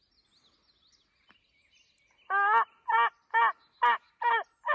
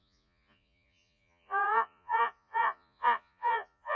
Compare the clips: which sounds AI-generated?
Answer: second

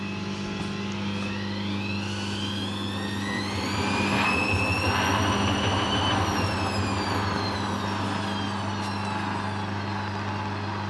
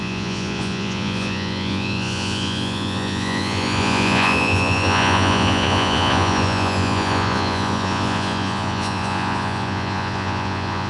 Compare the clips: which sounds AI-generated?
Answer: second